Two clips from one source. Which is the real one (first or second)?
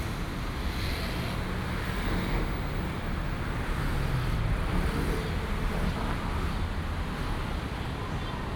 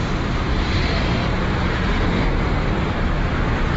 first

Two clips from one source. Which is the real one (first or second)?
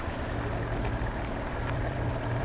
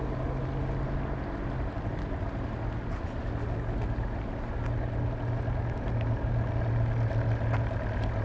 second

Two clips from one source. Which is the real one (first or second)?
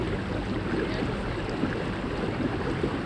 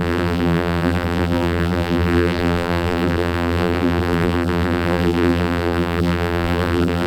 first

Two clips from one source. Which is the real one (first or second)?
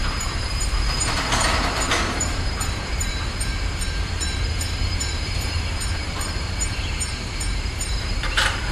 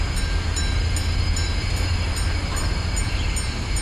second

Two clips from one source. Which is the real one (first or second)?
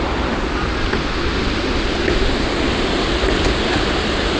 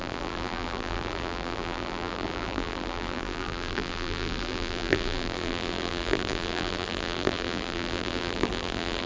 first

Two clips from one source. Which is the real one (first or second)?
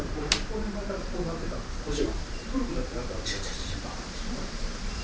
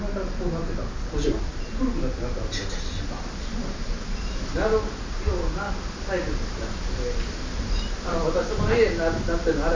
second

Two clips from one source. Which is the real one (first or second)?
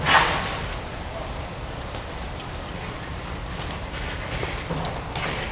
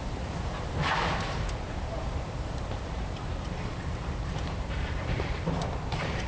first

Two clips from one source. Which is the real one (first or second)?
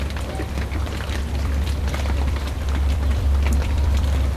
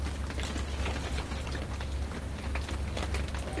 second